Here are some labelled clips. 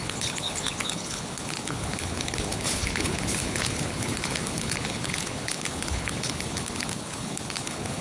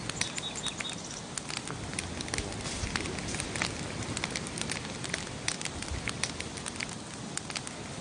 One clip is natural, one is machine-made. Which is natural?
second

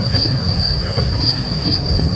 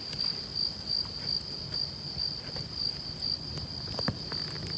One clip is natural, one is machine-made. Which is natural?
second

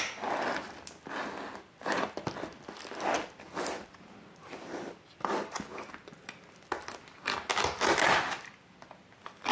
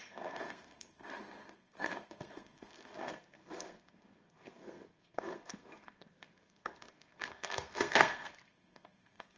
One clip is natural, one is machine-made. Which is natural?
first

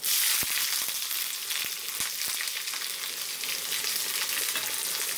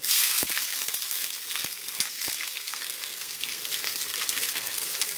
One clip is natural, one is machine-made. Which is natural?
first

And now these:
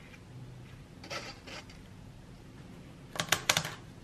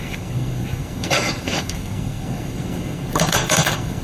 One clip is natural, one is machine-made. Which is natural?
first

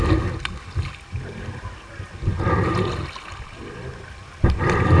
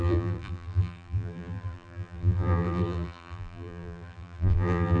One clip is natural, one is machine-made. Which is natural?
first